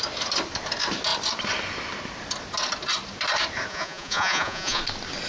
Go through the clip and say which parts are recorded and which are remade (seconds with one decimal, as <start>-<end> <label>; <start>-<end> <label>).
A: 0.0-3.7 recorded; 3.7-4.8 remade; 4.8-5.3 recorded